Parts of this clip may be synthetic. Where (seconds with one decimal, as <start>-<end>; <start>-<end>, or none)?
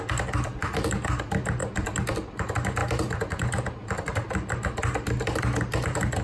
none